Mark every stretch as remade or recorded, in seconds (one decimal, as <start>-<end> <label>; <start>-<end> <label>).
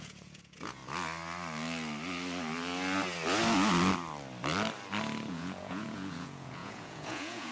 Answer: 0.0-0.8 remade; 0.8-5.3 recorded; 5.3-7.5 remade